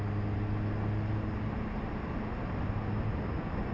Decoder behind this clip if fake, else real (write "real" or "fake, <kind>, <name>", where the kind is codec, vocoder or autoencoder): real